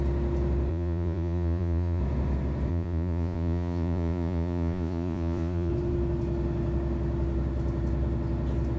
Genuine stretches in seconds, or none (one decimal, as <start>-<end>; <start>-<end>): 0.0-0.7; 2.0-2.7; 5.7-8.8